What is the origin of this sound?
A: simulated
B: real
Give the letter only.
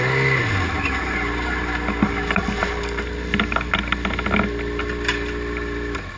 B